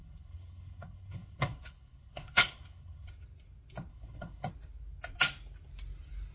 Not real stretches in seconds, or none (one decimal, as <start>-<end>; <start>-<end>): 0.0-3.1; 3.9-4.5

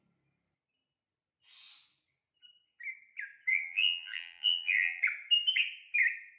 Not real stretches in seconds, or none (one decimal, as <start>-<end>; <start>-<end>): 3.5-5.0

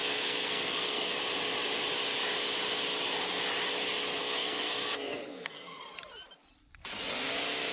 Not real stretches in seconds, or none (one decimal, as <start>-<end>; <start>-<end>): 0.0-1.2; 4.2-5.8

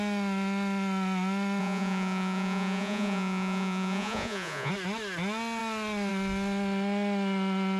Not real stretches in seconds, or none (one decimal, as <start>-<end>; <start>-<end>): 1.6-4.7

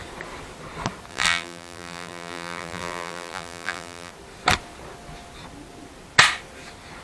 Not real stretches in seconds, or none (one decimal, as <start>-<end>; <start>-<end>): 1.1-4.1

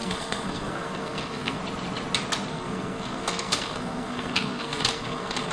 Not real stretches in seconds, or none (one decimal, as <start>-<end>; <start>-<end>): 0.0-1.6; 2.5-5.5

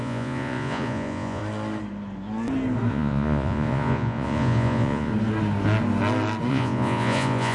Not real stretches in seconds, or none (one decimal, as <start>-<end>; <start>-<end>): 0.0-1.4; 2.9-5.1; 6.5-7.5

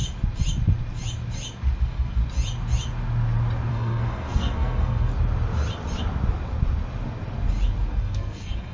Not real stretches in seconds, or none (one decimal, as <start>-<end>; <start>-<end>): 1.8-2.2; 3.7-5.1; 7.9-8.7